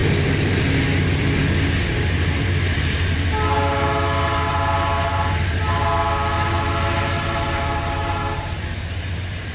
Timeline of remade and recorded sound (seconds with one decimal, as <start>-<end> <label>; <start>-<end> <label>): 0.0-9.5 recorded